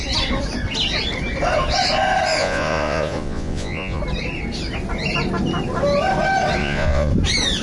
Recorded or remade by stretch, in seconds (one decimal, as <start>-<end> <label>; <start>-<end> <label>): 0.0-2.4 recorded; 2.4-4.0 remade; 4.0-6.6 recorded; 6.6-7.1 remade; 7.1-7.6 recorded